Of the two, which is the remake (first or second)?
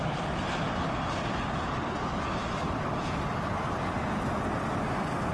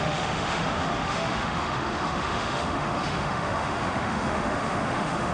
second